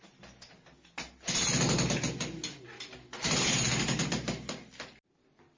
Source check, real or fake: real